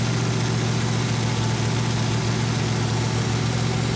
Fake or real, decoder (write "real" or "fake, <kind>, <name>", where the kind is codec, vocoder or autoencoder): real